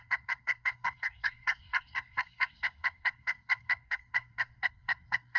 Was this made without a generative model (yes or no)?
no